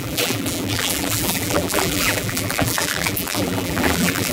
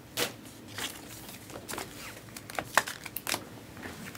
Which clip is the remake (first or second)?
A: first